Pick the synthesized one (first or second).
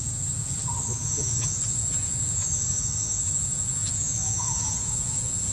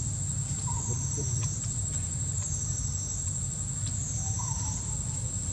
first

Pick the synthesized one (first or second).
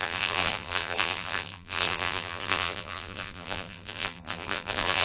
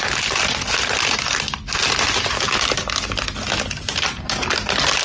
first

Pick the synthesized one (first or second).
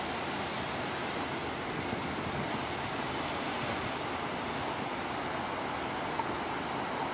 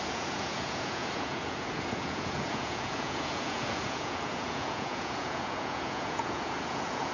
second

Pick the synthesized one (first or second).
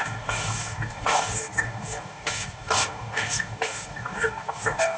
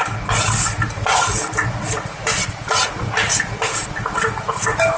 first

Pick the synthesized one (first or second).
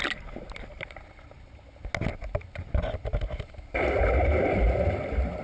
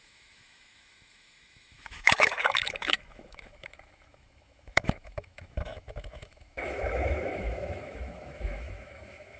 second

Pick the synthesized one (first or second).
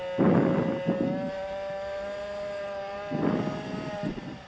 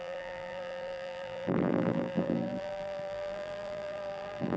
second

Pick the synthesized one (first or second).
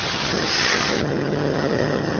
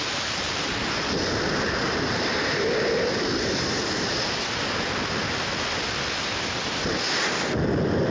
first